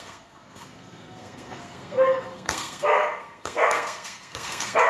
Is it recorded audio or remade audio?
remade